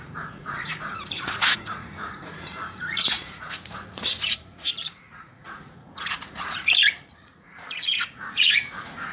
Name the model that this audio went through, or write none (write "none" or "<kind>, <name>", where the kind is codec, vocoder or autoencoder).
vocoder, Vocos